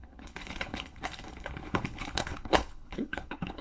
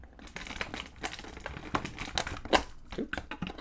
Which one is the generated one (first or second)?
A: first